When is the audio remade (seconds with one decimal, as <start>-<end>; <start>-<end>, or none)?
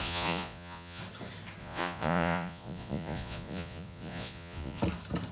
0.0-1.0; 1.6-4.8